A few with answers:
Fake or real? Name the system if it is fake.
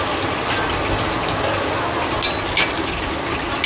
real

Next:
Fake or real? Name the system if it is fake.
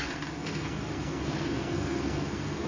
fake, codec, SNAC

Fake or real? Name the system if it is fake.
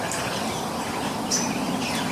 real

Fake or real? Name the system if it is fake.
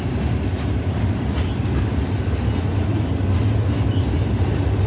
real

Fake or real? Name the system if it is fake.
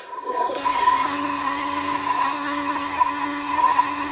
fake, codec, SNAC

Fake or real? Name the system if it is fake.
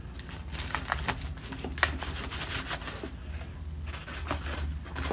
real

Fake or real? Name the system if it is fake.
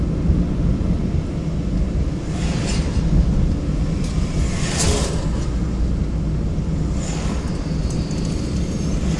real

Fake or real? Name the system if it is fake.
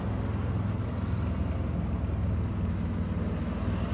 real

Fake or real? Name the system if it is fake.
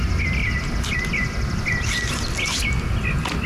real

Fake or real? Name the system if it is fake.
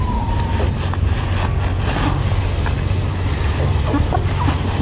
real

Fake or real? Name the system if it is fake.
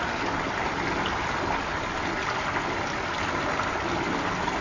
real